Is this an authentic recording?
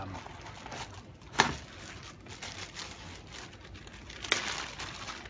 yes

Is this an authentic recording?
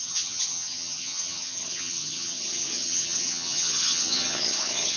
no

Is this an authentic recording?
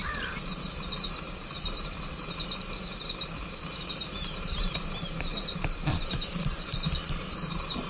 no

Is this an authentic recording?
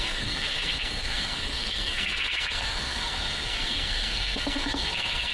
no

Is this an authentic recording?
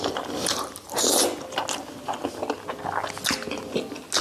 yes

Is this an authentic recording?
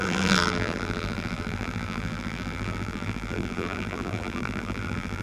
no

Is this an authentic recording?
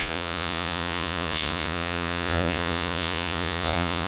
no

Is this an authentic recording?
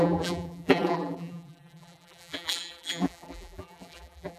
no